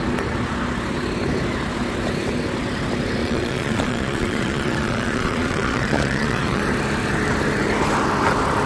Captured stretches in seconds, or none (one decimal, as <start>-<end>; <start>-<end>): 0.0-3.2; 6.6-8.7